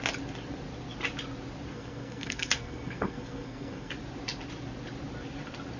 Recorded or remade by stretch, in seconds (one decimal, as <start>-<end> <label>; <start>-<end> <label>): 0.0-1.7 recorded; 1.7-3.9 remade; 3.9-5.8 recorded